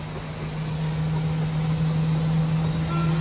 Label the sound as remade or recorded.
recorded